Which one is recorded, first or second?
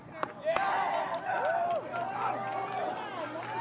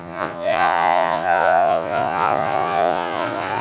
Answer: first